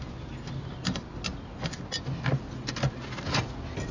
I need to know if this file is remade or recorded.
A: recorded